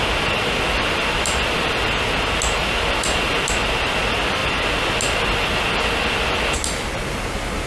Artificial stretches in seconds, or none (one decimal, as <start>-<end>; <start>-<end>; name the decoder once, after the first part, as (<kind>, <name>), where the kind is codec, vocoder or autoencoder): none